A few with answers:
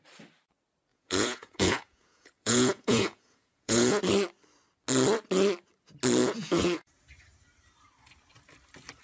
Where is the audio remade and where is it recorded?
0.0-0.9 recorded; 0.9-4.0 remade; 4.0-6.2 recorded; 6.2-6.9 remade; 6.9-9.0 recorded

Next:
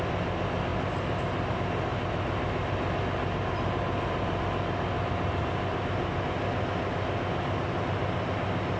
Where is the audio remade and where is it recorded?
0.0-0.7 recorded; 0.7-1.5 remade; 1.5-8.8 recorded

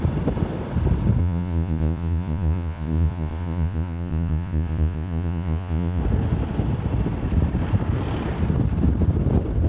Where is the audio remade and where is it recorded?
0.0-1.2 recorded; 1.2-6.0 remade; 6.0-9.7 recorded

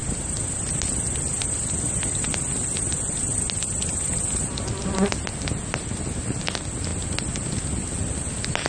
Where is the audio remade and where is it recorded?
0.0-8.7 recorded

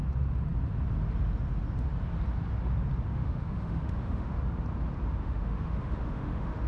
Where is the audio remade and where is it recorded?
0.0-3.1 recorded; 3.1-4.4 remade; 4.4-5.2 recorded; 5.2-6.7 remade

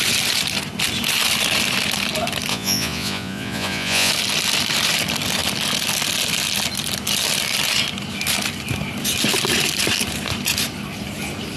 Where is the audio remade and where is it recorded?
0.0-2.5 recorded; 2.5-4.1 remade; 4.1-11.6 recorded

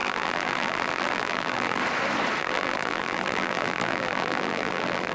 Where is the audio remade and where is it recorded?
0.0-1.8 remade; 1.8-2.4 recorded; 2.4-5.1 remade